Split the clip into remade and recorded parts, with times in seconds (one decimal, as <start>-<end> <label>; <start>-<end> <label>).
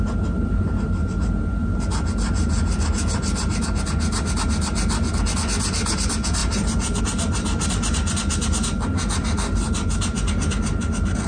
0.0-11.3 recorded